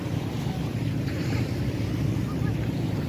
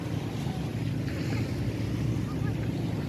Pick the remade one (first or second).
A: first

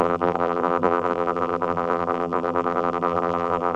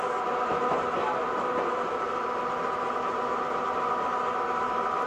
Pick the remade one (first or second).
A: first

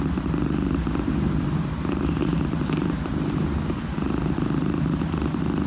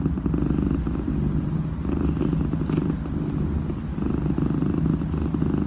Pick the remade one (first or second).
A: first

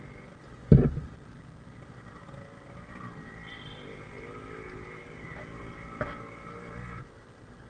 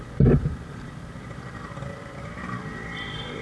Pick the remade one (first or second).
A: second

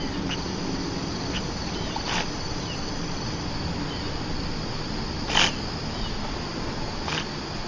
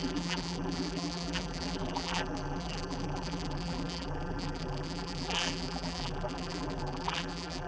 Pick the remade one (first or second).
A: second